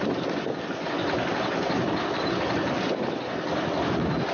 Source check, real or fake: real